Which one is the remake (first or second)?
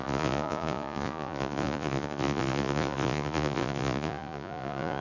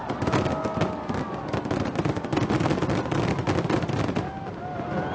first